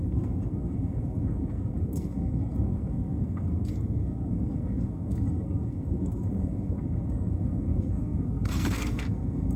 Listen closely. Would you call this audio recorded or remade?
remade